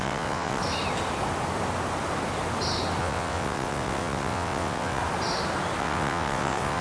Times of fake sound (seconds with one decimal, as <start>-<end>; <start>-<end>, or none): 0.0-0.6; 3.0-5.0; 5.8-6.8